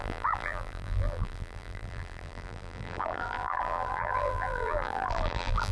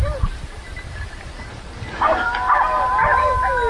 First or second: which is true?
second